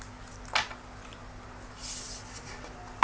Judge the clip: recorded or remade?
recorded